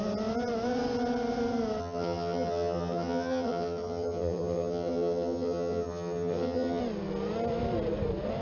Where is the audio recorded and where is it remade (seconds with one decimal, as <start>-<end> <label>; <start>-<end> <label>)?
0.0-1.8 recorded; 1.8-6.8 remade; 6.8-8.4 recorded